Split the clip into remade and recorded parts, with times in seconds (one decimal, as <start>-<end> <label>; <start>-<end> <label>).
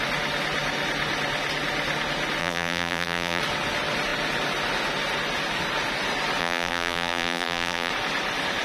0.0-2.4 recorded; 2.4-3.4 remade; 3.4-6.4 recorded; 6.4-7.9 remade; 7.9-8.6 recorded